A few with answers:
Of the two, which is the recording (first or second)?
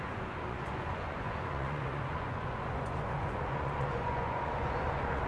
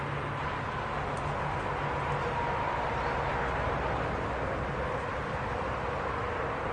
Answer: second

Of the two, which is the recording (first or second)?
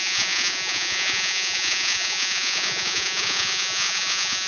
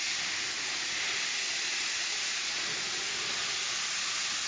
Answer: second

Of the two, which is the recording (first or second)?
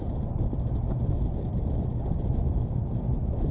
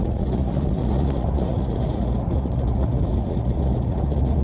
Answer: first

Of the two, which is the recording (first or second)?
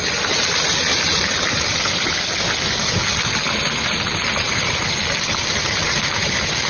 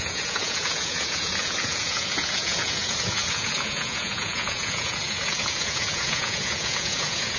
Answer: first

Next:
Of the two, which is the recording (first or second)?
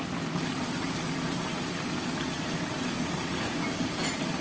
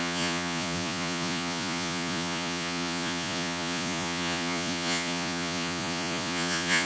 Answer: first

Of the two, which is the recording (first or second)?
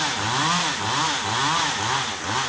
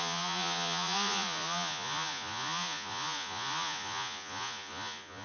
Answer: first